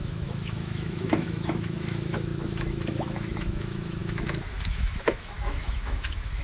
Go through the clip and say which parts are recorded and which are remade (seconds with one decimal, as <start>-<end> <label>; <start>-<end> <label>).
0.0-6.4 remade